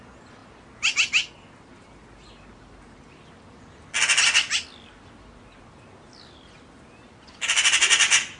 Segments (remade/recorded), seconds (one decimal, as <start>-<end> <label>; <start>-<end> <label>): 0.0-8.4 recorded